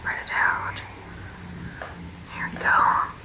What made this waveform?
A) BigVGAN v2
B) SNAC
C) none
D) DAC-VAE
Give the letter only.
C